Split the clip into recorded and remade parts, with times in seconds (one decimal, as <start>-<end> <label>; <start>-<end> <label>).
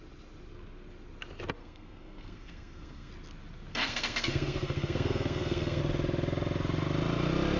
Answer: 0.0-1.6 recorded; 1.6-3.1 remade; 3.1-3.7 recorded; 3.7-5.8 remade; 5.8-7.6 recorded